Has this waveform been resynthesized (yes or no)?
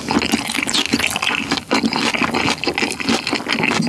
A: no